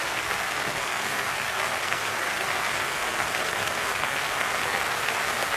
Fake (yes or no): yes